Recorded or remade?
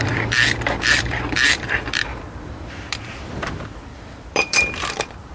remade